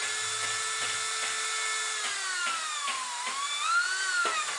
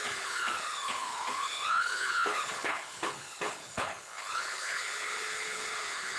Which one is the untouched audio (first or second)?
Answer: first